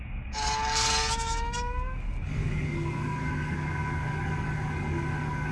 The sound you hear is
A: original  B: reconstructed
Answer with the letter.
B